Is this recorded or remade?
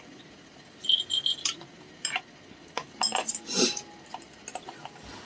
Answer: recorded